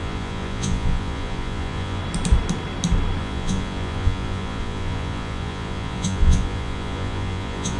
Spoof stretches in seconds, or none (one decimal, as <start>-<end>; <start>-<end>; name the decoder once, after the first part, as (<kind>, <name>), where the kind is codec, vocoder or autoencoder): 0.0-2.0 (vocoder, Vocos); 3.2-7.8